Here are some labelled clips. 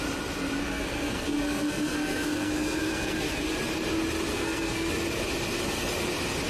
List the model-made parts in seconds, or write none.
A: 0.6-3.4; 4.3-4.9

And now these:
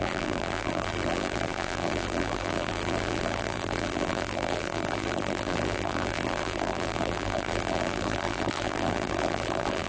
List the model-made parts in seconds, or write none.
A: 0.0-9.9

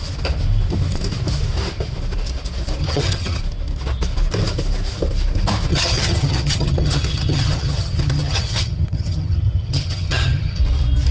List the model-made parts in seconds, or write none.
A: 2.8-3.4; 5.7-10.6

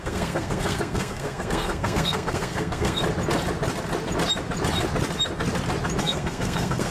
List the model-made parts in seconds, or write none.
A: 0.0-3.0; 6.0-6.9

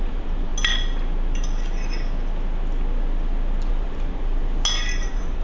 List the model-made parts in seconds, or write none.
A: 0.0-0.5; 3.7-4.4; 5.0-5.4